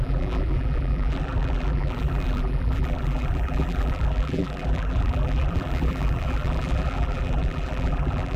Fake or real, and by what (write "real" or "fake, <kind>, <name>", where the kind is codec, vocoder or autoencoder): fake, vocoder, BigVGAN v2